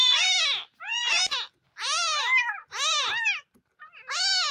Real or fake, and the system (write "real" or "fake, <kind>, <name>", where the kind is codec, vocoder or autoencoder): real